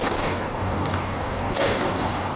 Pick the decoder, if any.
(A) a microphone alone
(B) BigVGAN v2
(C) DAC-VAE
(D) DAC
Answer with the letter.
D